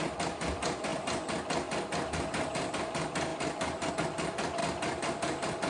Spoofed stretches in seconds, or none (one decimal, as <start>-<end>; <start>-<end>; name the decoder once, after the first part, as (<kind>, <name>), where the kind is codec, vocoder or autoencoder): none